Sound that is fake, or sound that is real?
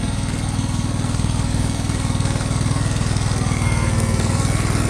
fake